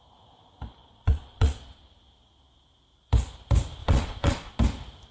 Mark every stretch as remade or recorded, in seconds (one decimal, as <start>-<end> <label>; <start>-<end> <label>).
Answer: 0.0-0.8 recorded; 0.8-1.8 remade; 1.8-3.8 recorded; 3.8-4.6 remade; 4.6-5.1 recorded

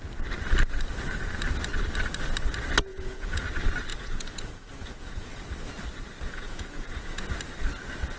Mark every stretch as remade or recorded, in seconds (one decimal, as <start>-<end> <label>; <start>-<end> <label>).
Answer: 0.0-2.9 recorded; 2.9-3.4 remade; 3.4-3.9 recorded; 3.9-5.4 remade; 5.4-6.3 recorded; 6.3-7.2 remade; 7.2-8.2 recorded

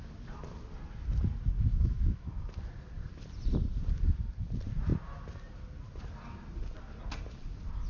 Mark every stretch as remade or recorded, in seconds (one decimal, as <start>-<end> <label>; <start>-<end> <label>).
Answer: 0.0-1.7 recorded; 1.7-2.4 remade; 2.4-7.9 recorded